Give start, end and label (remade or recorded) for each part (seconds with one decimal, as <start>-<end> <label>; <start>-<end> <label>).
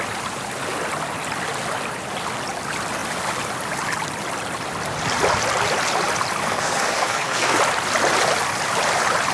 0.0-6.4 recorded; 6.4-7.6 remade; 7.6-9.3 recorded